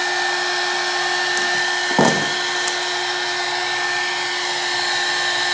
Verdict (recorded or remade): recorded